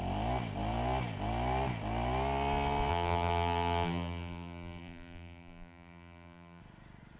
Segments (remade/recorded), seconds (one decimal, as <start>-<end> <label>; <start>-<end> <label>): 0.0-2.9 recorded; 2.9-6.6 remade; 6.6-7.2 recorded